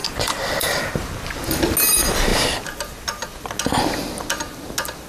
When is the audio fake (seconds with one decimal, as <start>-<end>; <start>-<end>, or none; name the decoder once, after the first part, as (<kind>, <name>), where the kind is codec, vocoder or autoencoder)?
0.0-0.8 (vocoder, BigVGAN v2)

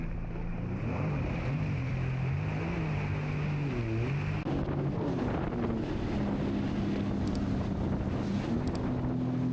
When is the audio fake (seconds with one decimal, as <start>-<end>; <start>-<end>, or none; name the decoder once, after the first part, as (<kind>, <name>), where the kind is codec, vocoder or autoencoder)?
0.5-1.9 (vocoder, BigVGAN v2)

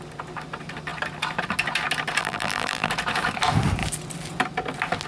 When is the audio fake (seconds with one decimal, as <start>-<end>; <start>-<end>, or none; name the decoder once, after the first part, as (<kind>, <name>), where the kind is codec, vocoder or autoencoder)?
2.2-2.9 (vocoder, BigVGAN v2)